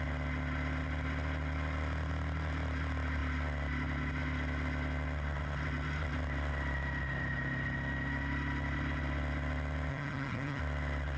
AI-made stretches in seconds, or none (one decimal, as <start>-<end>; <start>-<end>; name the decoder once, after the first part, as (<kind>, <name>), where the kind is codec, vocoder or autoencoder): 9.9-10.6 (vocoder, HiFi-GAN)